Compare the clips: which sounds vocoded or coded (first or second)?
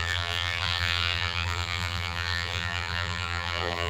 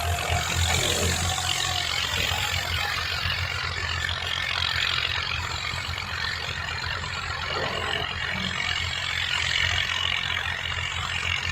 first